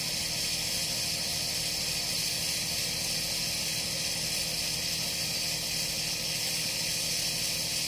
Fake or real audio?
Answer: real